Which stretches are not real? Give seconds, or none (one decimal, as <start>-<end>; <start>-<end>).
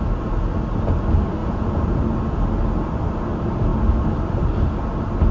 1.4-2.0